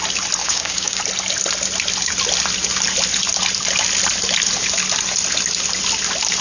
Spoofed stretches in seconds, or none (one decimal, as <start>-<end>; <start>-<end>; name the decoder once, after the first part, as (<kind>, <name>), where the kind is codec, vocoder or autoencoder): 0.4-1.0 (codec, DAC)